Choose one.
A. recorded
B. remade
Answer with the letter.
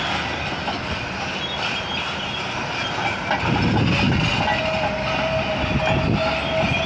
A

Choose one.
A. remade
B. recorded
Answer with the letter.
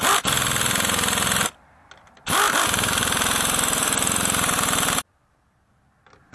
A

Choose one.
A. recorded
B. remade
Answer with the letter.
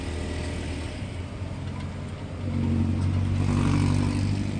A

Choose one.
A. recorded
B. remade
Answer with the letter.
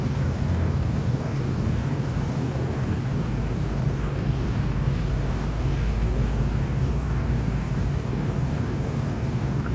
B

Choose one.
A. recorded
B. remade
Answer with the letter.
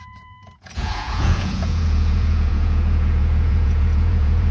B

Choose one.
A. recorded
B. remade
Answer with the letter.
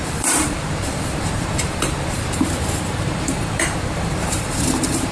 B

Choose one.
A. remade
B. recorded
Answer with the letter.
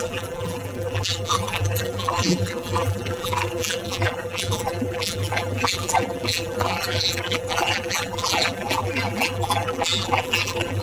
A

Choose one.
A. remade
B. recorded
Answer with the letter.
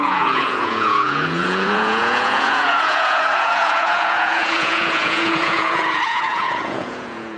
A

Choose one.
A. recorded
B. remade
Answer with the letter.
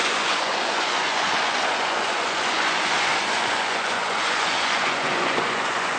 B